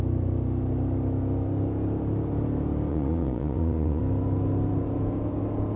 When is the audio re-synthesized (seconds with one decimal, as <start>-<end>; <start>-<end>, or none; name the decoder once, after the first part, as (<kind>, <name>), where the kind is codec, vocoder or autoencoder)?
2.9-4.0 (vocoder, Vocos)